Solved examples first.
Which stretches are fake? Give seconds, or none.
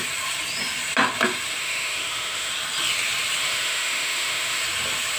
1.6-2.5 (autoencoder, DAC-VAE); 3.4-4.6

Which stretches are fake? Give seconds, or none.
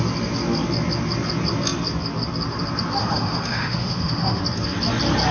3.0-4.4 (autoencoder, DAC-VAE)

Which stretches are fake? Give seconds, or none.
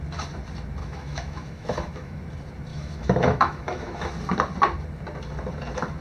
0.8-2.2 (autoencoder, DAC-VAE); 2.7-4.1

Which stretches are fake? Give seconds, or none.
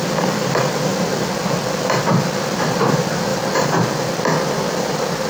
none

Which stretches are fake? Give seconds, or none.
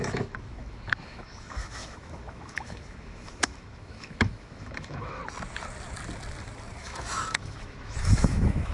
0.0-5.2 (autoencoder, DAC-VAE); 6.8-8.7